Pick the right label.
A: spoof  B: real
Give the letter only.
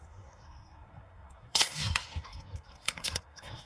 A